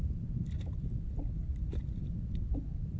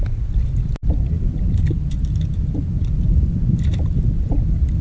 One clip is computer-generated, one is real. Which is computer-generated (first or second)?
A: second